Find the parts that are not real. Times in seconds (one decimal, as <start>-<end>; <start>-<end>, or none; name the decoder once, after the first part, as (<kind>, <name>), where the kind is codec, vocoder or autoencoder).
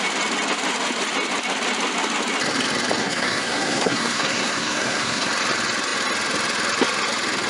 3.0-5.3 (codec, SNAC)